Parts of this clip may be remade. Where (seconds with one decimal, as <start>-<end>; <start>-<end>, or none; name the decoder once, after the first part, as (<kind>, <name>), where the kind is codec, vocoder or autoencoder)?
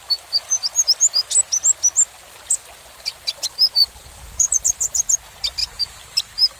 3.8-5.1 (vocoder, BigVGAN v2); 5.6-6.6